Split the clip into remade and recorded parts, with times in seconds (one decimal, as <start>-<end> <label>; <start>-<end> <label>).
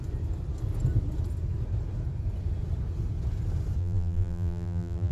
0.0-3.8 recorded; 3.8-5.1 remade